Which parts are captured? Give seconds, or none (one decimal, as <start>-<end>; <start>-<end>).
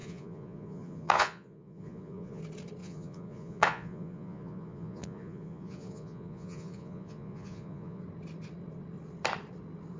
2.4-2.8; 8.0-10.0